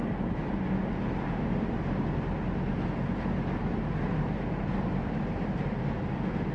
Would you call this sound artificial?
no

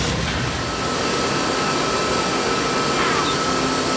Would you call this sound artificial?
no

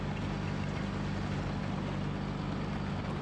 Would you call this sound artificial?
no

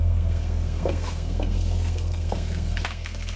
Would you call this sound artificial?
yes